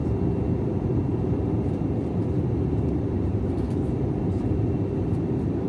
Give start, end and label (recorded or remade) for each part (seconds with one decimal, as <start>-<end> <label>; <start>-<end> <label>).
0.0-0.6 recorded; 0.6-5.7 remade